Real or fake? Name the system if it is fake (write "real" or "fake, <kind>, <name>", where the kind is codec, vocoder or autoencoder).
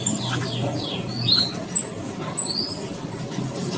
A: real